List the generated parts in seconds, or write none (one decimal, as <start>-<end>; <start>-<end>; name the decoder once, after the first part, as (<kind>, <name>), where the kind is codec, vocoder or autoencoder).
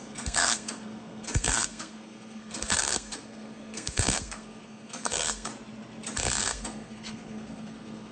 0.0-5.5 (codec, SNAC); 6.4-8.1